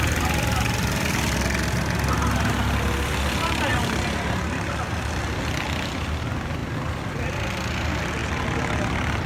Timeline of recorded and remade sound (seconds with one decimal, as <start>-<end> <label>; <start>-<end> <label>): 0.0-9.3 recorded